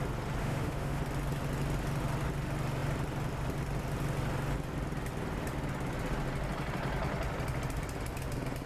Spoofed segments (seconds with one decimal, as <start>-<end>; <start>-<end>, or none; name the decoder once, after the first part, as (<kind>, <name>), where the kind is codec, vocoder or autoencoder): 0.4-1.0 (autoencoder, DAC-VAE)